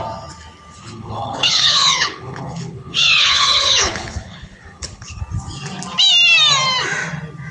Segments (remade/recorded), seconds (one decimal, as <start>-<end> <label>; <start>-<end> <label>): 0.0-0.8 recorded; 0.8-5.2 remade; 5.2-7.5 recorded